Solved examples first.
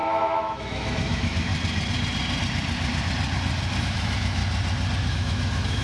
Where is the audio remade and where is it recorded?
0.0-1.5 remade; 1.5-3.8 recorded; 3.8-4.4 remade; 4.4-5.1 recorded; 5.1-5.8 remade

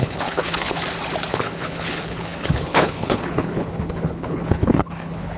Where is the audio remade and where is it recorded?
0.0-0.8 remade; 0.8-1.3 recorded; 1.3-5.4 remade

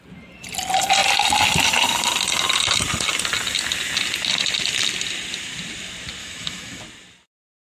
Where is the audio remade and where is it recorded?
0.0-6.2 recorded; 6.2-6.8 remade; 6.8-7.8 recorded

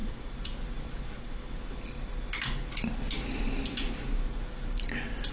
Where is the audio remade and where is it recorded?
0.0-1.5 remade; 1.5-5.3 recorded

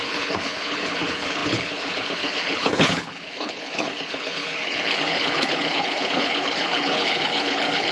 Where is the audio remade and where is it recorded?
0.0-7.9 remade